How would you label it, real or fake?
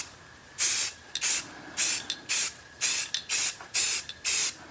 real